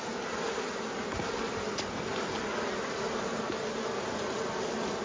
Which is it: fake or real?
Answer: real